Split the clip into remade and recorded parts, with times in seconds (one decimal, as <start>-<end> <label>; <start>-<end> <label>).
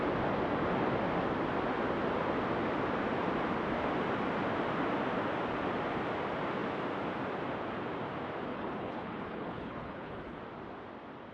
0.0-8.5 recorded; 8.5-10.4 remade; 10.4-11.3 recorded